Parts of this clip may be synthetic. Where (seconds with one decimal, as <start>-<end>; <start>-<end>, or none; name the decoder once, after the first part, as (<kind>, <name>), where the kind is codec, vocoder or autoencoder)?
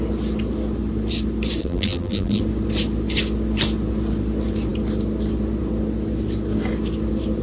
1.6-2.4 (vocoder, BigVGAN v2)